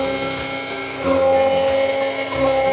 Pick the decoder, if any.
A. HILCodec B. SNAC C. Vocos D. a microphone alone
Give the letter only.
D